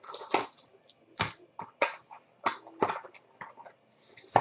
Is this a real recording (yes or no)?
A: yes